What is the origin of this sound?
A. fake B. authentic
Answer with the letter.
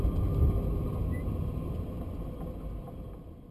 B